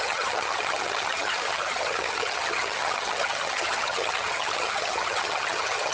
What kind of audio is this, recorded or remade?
remade